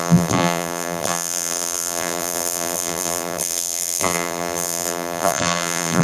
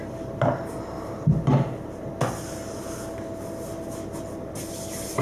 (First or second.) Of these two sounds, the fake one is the first